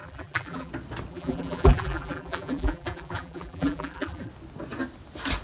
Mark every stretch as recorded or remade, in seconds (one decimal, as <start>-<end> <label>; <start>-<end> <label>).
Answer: 0.0-0.7 remade; 0.7-1.1 recorded; 1.1-4.3 remade; 4.3-5.4 recorded